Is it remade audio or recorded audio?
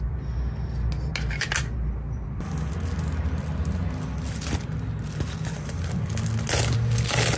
recorded